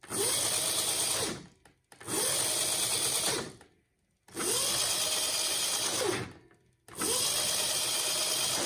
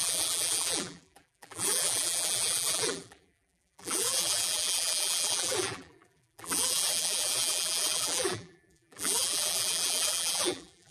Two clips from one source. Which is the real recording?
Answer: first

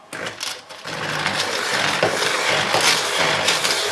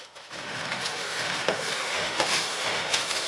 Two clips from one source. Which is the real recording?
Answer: first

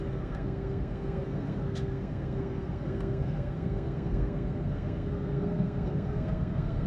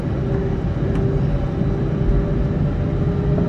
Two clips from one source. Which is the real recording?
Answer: second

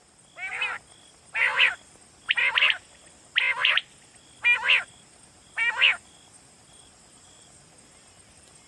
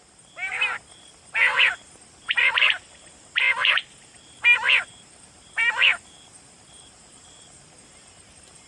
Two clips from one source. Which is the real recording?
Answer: first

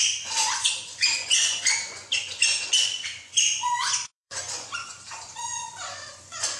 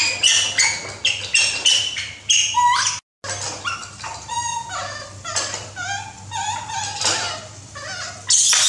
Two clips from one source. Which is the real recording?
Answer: second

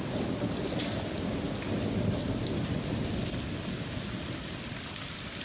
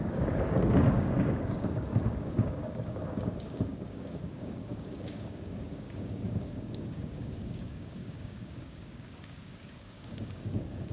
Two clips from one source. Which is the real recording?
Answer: first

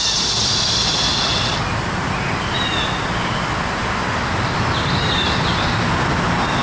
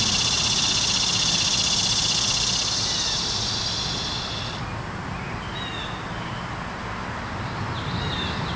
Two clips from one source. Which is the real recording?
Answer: second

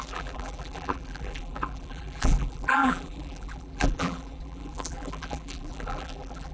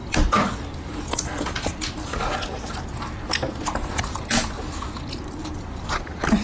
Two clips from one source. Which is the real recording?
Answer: second